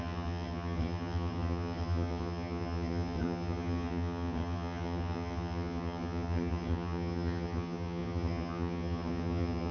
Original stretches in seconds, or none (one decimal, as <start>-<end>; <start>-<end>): none